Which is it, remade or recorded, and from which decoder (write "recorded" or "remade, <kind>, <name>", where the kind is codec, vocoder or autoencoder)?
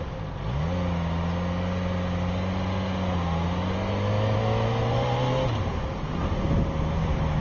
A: recorded